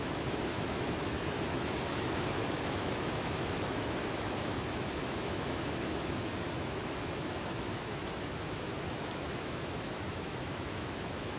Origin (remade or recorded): remade